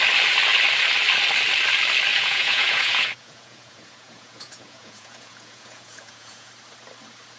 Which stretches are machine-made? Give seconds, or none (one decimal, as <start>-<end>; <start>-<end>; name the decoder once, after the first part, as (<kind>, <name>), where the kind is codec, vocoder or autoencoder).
2.1-6.5 (vocoder, Vocos)